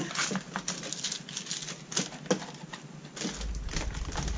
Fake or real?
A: real